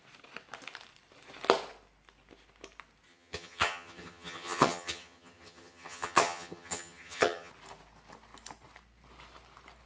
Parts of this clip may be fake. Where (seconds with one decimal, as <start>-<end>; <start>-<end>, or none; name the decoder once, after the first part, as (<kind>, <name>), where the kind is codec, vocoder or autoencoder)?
3.1-7.5 (vocoder, HiFi-GAN)

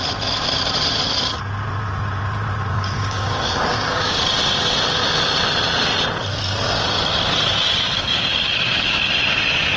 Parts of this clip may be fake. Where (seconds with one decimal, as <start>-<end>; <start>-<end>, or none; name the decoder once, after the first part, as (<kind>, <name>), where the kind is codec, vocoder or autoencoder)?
2.7-4.1 (codec, DAC); 7.8-9.1

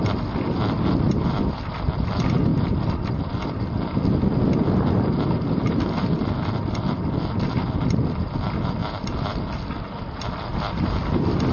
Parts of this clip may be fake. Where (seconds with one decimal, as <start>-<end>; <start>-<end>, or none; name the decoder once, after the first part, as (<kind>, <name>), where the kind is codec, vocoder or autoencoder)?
none